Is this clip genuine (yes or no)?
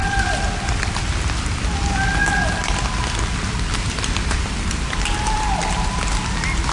yes